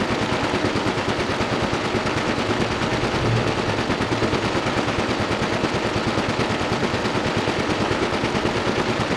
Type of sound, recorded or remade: recorded